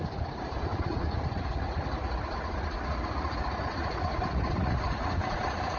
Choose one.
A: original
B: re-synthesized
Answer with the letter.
B